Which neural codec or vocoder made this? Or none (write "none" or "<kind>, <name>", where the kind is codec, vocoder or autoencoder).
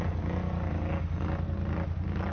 none